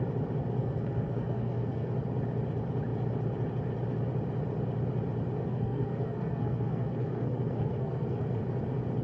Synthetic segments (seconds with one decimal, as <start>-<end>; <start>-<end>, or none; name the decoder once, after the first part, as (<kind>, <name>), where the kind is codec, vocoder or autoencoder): 0.6-1.9 (codec, SNAC); 5.4-8.4